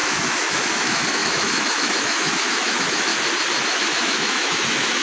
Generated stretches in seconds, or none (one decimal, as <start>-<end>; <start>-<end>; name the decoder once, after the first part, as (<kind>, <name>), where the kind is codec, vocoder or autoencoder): 0.0-3.1 (autoencoder, DAC-VAE); 3.8-5.0